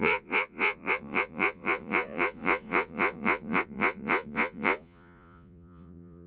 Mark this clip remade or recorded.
remade